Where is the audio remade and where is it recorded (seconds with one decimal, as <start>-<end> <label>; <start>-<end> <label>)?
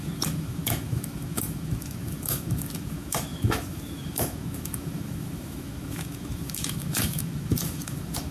0.0-8.3 remade